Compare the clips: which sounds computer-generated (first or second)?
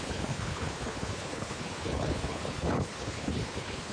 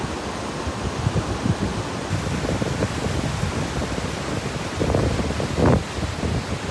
first